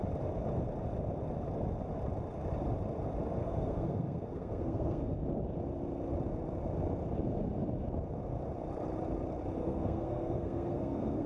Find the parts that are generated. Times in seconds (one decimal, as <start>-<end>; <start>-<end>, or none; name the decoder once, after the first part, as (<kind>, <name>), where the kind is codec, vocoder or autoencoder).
3.4-5.2 (codec, SNAC); 9.6-11.3